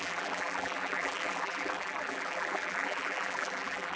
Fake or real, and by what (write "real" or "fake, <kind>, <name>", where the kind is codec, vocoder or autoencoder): fake, vocoder, BigVGAN v2